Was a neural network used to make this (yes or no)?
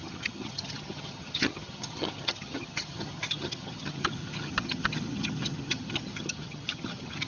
yes